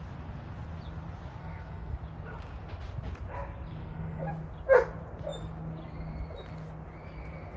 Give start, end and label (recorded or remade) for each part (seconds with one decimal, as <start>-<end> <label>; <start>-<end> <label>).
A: 0.0-1.4 recorded; 1.4-2.0 remade; 2.0-3.8 recorded; 3.8-4.3 remade; 4.3-7.6 recorded